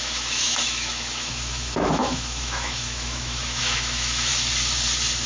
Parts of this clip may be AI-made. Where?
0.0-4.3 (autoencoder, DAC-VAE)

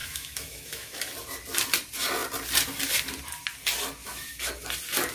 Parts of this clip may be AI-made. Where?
0.0-1.0 (autoencoder, DAC-VAE); 4.0-4.5

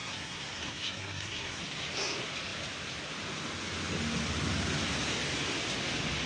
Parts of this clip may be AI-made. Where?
0.0-1.6 (codec, SNAC)

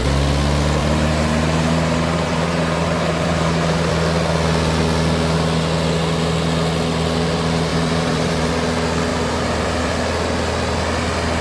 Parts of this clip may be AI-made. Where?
0.8-3.9 (vocoder, BigVGAN v2); 7.7-8.5; 9.1-9.9

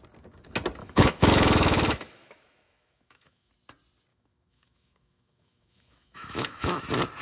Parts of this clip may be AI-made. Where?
0.8-3.5 (autoencoder, DAC-VAE); 4.1-6.8

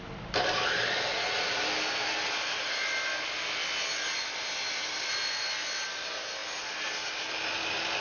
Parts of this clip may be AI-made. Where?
none